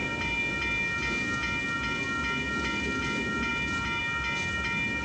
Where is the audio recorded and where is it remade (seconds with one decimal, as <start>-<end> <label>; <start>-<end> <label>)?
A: 0.0-5.0 recorded